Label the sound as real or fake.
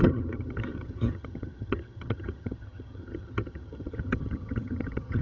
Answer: fake